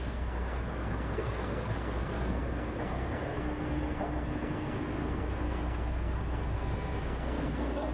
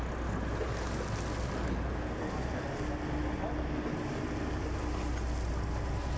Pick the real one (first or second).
second